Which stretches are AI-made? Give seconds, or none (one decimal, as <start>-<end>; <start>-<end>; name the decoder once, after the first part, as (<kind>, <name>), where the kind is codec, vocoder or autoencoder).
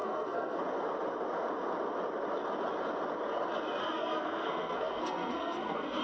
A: 0.0-0.6 (codec, SNAC); 3.8-6.0